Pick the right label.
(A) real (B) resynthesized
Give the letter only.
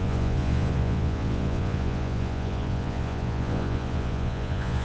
B